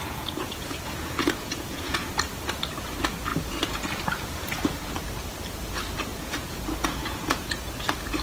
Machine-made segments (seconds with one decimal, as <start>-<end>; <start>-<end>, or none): 0.0-2.1; 3.3-4.9; 6.1-7.7